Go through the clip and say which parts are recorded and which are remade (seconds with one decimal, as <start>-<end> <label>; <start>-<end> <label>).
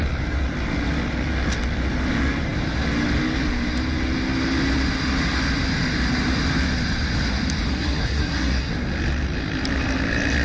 0.0-7.7 recorded; 7.7-8.7 remade; 8.7-10.4 recorded